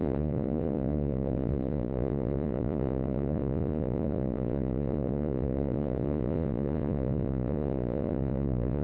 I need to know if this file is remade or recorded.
remade